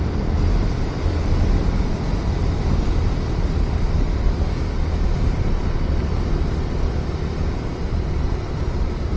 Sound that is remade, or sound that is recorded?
recorded